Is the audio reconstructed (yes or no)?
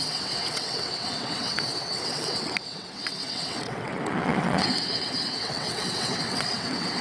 yes